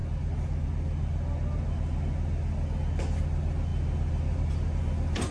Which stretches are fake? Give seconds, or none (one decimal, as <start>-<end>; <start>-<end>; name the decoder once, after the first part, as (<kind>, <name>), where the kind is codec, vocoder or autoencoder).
none